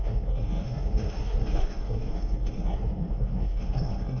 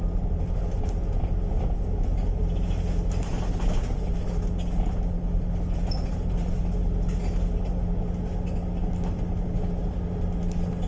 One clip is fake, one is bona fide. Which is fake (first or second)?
first